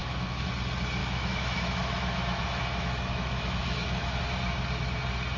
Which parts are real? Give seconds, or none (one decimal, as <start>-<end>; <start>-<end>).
0.5-1.0; 4.2-5.4